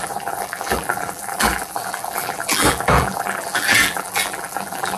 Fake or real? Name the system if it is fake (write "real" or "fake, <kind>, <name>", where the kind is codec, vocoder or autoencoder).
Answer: fake, vocoder, BigVGAN v2